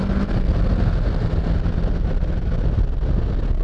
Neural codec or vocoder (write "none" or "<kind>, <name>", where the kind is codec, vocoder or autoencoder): none